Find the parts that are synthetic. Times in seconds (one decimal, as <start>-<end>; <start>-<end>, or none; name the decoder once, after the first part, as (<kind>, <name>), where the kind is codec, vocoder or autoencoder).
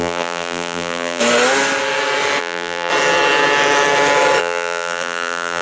0.0-1.2 (vocoder, BigVGAN v2); 2.4-2.9; 4.4-5.6